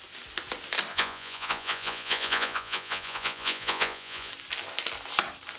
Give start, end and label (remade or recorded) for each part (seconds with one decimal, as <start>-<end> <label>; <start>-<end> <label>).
0.0-0.9 recorded; 0.9-4.3 remade; 4.3-5.6 recorded